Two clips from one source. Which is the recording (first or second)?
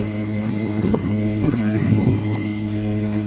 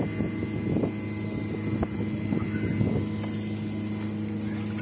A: second